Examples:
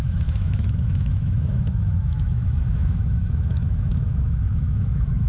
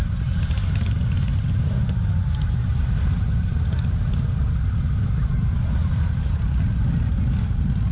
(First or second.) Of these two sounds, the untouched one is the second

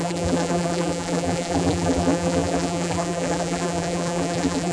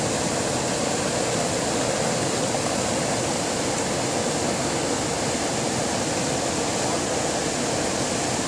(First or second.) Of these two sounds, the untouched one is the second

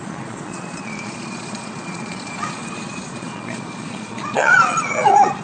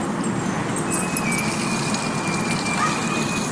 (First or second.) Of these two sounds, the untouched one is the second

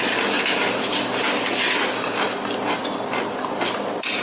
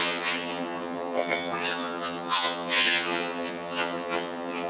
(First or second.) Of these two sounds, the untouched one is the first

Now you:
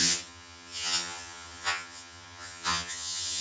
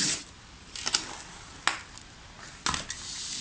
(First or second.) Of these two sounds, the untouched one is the second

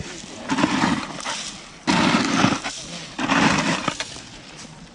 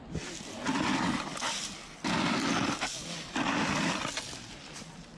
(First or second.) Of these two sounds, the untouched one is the second